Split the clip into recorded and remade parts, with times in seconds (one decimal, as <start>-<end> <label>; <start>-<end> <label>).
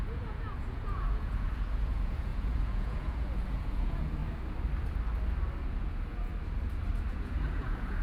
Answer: 0.0-4.2 remade; 4.2-5.6 recorded; 5.6-6.3 remade; 6.3-7.1 recorded; 7.1-8.0 remade